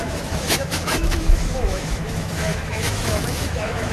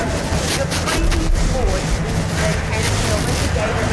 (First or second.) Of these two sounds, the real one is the second